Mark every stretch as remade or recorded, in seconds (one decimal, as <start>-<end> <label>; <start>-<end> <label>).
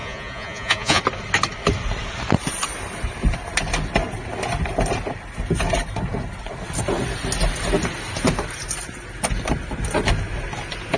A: 0.0-1.0 remade; 1.0-11.0 recorded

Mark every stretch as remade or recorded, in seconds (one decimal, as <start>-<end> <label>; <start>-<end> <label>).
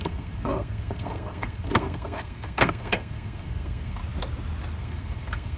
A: 0.0-4.0 remade; 4.0-4.8 recorded; 4.8-5.6 remade